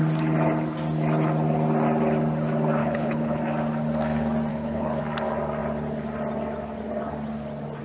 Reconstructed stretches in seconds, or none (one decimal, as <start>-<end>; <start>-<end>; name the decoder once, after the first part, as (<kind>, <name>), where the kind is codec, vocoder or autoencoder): 2.8-3.4 (codec, HILCodec); 4.5-5.0